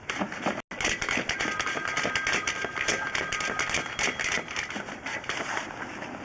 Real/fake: real